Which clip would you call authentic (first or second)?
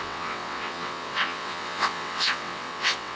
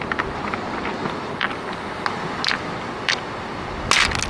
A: second